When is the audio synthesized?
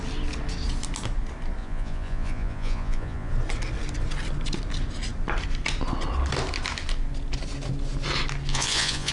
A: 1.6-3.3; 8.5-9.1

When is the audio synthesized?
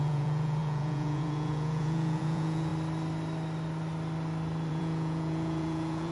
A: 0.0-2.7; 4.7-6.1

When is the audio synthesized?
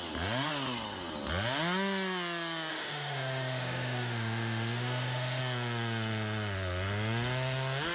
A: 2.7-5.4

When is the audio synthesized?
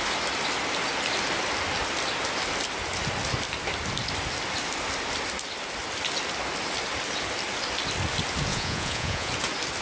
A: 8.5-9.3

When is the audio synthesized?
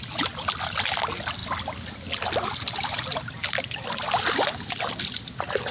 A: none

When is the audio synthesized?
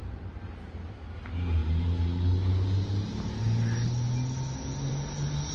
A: none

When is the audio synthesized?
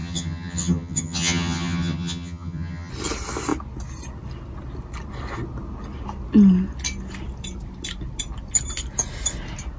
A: 0.0-2.9